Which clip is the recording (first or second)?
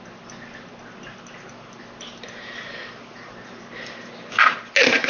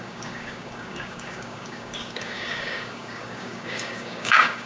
first